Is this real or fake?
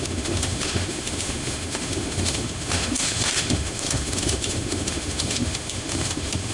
fake